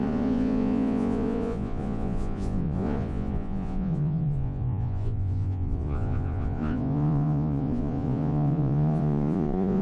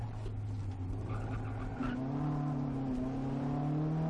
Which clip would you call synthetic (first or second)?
first